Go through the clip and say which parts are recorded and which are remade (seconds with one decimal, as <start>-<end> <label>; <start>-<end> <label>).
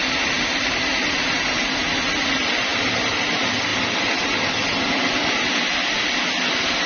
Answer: 0.0-2.7 recorded; 2.7-3.3 remade; 3.3-3.7 recorded; 3.7-5.3 remade; 5.3-6.9 recorded